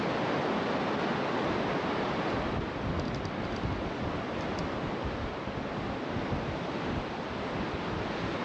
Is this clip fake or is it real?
real